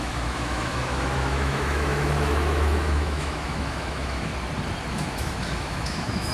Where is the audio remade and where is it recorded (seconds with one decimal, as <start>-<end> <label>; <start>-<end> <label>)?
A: 0.0-4.3 remade; 4.3-4.9 recorded; 4.9-6.3 remade